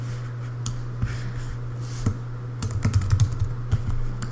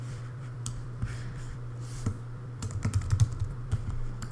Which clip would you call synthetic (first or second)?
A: second